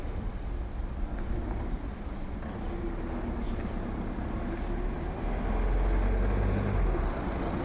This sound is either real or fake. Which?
real